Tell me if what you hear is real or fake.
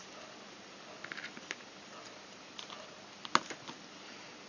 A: real